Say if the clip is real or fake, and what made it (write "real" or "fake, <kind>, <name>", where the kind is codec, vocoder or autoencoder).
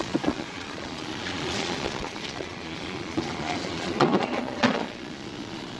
fake, vocoder, Vocos